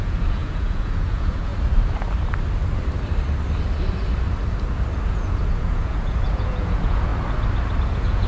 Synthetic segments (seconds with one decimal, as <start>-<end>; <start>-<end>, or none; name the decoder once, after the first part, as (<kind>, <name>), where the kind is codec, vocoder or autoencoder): 0.0-1.5 (vocoder, Vocos); 5.1-7.1; 7.8-8.3